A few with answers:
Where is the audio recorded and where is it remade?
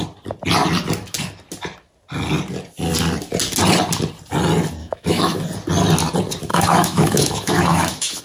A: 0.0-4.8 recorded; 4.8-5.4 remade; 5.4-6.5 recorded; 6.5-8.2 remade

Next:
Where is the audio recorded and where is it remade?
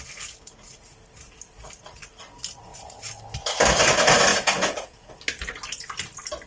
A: 0.0-4.3 recorded; 4.3-5.1 remade; 5.1-6.5 recorded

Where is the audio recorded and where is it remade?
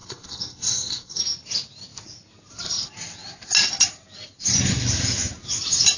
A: 0.0-1.2 remade; 1.2-6.0 recorded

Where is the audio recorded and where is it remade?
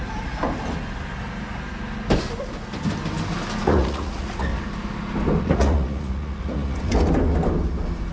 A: 0.0-0.4 remade; 0.4-3.6 recorded; 3.6-4.5 remade; 4.5-5.4 recorded; 5.4-6.9 remade; 6.9-8.1 recorded